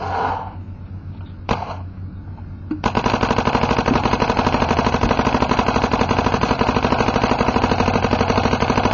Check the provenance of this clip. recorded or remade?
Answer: recorded